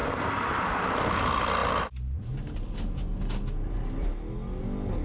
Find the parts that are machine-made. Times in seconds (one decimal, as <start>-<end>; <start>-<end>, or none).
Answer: none